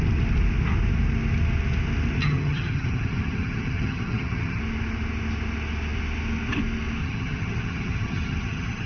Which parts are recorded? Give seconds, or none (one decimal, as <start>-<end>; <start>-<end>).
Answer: 0.0-2.2; 4.6-7.0